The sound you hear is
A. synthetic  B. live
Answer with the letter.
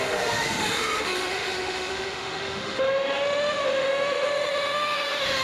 A